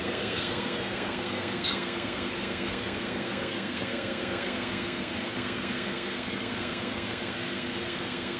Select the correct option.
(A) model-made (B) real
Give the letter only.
A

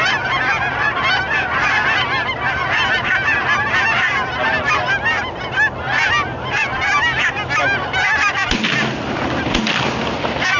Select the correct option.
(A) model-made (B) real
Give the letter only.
B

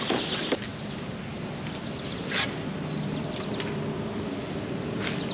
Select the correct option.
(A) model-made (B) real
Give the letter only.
B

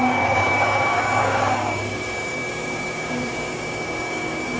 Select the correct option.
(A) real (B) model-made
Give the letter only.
B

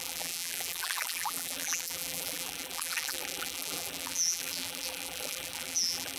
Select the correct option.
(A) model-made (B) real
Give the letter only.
A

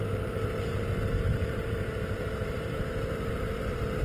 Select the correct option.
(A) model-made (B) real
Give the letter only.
A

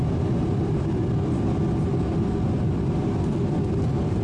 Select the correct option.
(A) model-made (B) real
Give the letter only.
B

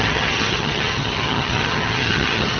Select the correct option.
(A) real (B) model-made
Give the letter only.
B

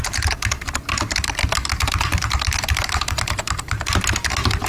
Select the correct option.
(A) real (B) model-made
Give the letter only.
B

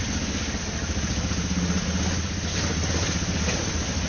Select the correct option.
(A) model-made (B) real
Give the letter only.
B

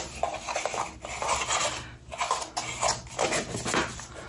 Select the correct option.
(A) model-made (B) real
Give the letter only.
B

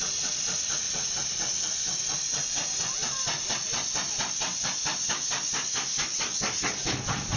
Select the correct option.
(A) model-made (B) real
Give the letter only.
B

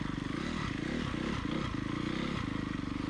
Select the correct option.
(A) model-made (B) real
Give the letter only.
B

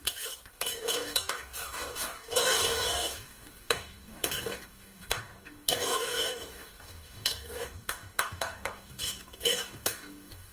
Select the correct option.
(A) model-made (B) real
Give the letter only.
A